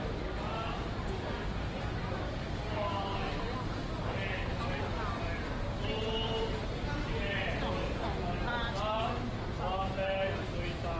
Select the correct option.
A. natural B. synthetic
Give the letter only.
A